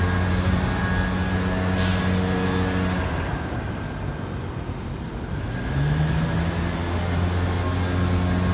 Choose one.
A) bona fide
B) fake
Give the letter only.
A